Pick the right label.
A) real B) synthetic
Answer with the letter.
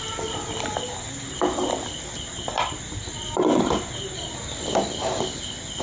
A